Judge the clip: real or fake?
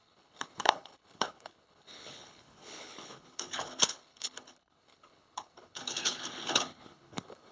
fake